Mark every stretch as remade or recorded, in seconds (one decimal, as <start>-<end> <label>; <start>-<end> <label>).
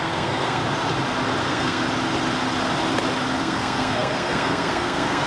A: 0.0-0.6 remade; 0.6-1.4 recorded; 1.4-1.8 remade; 1.8-3.4 recorded; 3.4-5.3 remade